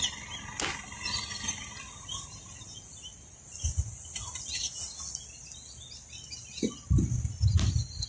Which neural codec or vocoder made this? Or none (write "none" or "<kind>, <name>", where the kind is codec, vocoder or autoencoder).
none